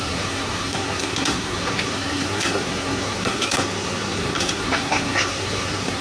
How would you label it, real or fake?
fake